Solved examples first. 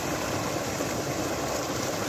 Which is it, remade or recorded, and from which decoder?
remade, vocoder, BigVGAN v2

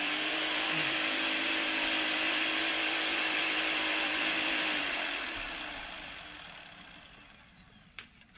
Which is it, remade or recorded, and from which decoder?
remade, vocoder, BigVGAN v2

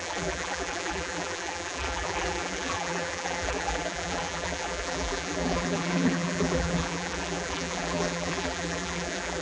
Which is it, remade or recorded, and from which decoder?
remade, vocoder, BigVGAN v2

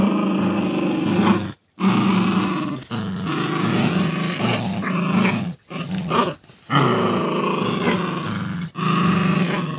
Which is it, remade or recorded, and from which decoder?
recorded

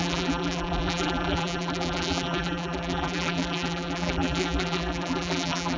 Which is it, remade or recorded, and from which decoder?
remade, vocoder, BigVGAN v2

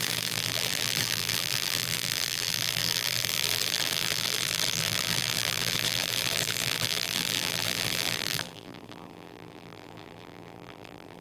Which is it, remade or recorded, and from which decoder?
remade, vocoder, BigVGAN v2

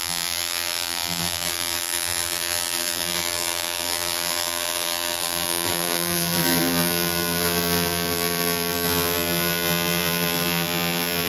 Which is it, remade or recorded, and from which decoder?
remade, vocoder, BigVGAN v2